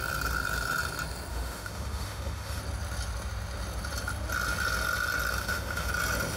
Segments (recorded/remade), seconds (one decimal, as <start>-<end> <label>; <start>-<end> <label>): 0.0-1.3 recorded; 1.3-2.6 remade; 2.6-5.4 recorded; 5.4-5.9 remade; 5.9-6.4 recorded